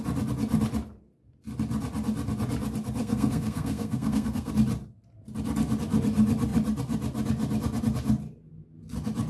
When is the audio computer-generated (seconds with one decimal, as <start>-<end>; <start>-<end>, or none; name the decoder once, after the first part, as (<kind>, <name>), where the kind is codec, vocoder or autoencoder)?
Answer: 3.0-4.5 (codec, SNAC)